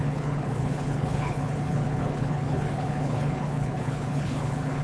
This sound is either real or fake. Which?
fake